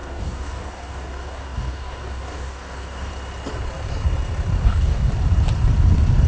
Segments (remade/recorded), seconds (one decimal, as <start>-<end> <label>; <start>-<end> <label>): 0.0-3.1 remade; 3.1-4.6 recorded; 4.6-5.1 remade; 5.1-6.3 recorded